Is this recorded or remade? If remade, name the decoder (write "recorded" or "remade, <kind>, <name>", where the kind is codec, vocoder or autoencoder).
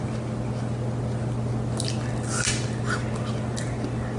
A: recorded